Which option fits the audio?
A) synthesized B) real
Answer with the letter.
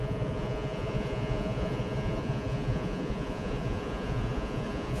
A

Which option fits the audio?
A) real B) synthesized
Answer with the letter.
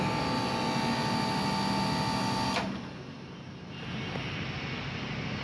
A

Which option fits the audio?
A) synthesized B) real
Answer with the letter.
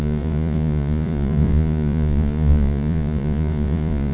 A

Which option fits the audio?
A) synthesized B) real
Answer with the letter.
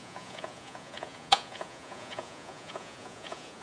A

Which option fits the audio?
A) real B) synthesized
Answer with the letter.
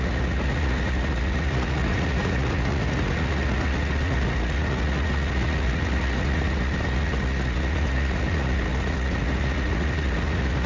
B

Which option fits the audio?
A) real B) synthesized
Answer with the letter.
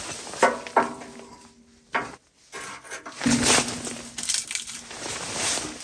A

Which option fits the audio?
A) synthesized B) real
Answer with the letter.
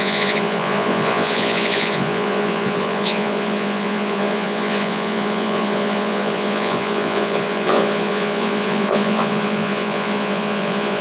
A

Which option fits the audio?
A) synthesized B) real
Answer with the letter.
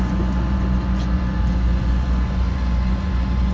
A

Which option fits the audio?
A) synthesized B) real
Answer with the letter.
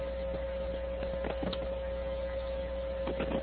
B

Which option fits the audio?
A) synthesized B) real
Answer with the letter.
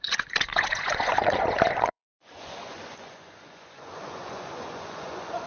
A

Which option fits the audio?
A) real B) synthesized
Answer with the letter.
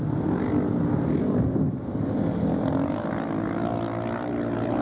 A